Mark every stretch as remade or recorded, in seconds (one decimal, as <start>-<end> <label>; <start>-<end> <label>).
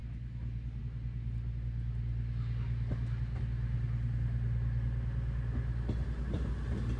0.0-7.0 recorded